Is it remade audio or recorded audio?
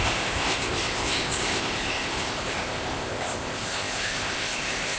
remade